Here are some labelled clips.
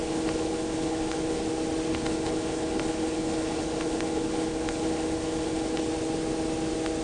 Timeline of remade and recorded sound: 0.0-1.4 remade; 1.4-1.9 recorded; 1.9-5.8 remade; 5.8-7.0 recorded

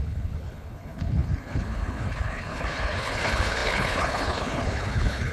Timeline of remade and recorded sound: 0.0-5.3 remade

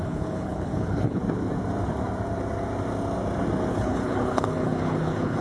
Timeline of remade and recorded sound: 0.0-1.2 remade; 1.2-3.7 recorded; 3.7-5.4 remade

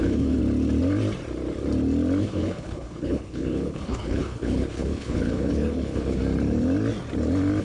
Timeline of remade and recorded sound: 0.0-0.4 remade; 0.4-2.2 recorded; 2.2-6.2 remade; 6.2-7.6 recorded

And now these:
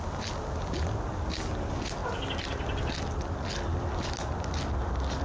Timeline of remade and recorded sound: 0.0-5.2 recorded

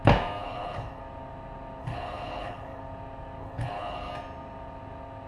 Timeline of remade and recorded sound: 0.0-0.4 recorded; 0.4-1.0 remade; 1.0-1.8 recorded; 1.8-2.8 remade; 2.8-3.4 recorded; 3.4-4.1 remade; 4.1-5.3 recorded

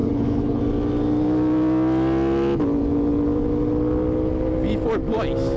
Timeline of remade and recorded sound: 0.0-0.6 remade; 0.6-5.6 recorded